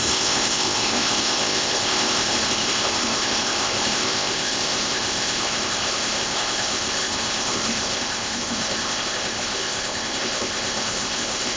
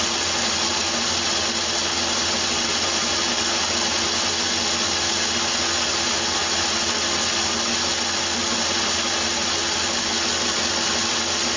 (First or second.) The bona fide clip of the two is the second